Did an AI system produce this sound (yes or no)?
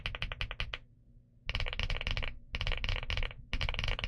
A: no